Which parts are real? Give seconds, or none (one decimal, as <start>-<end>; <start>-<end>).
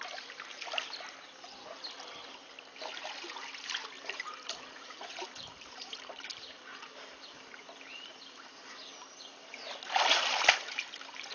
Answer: 0.5-4.0; 9.4-10.1